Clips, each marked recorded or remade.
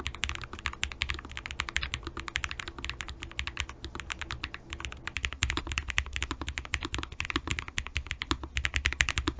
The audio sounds recorded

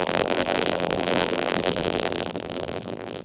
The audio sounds remade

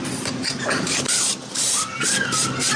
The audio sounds recorded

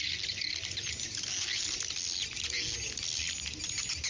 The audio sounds recorded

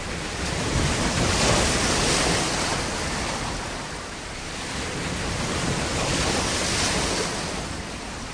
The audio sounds recorded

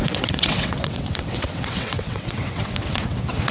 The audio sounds remade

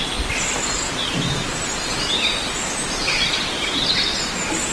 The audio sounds recorded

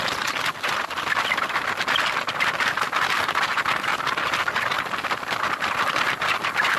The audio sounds recorded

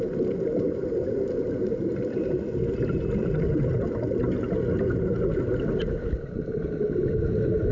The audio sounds recorded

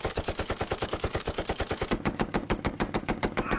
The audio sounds remade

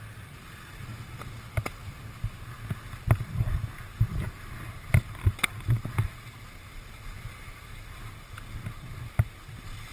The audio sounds recorded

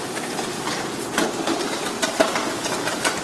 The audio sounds remade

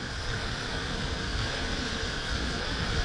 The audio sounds remade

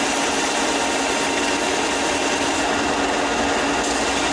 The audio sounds recorded